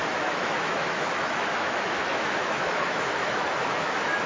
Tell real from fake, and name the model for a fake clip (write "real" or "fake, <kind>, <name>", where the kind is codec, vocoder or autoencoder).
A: fake, autoencoder, DAC-VAE